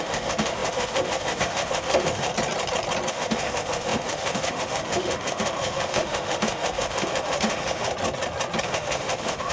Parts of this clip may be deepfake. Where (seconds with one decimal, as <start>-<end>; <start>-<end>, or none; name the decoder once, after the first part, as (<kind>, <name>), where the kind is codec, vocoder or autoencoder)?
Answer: 0.0-2.3 (autoencoder, DAC-VAE); 3.1-7.9; 8.6-9.5